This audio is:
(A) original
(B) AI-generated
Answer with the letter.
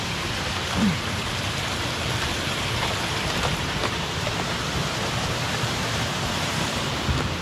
B